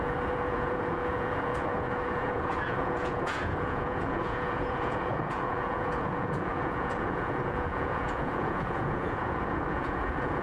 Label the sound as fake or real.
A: fake